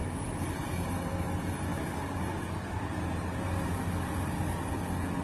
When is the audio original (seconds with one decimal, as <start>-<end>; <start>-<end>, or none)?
0.0-5.2